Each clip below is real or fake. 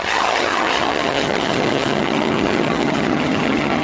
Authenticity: fake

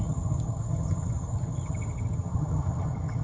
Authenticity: fake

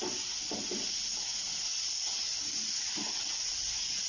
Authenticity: real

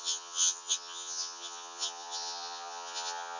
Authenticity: fake